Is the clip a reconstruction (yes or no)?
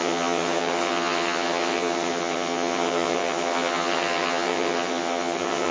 yes